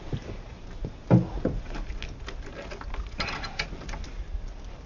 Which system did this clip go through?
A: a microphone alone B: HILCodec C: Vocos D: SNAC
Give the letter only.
A